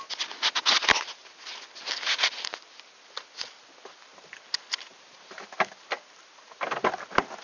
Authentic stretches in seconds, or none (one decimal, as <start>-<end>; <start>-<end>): 0.0-4.9; 5.7-7.4